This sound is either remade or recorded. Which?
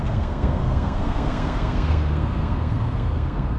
remade